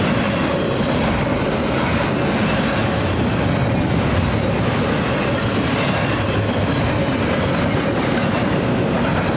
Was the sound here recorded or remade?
recorded